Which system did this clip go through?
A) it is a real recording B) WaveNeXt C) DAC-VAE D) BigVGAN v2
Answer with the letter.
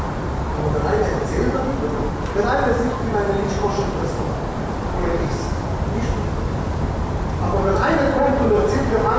A